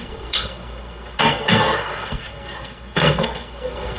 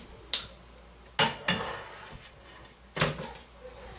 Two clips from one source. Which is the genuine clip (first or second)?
second